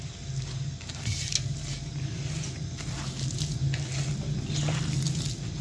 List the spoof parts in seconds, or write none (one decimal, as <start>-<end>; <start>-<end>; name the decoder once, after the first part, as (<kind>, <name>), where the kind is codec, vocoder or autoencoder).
none